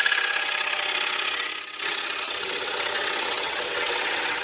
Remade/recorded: remade